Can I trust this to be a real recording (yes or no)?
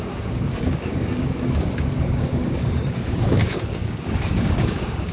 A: no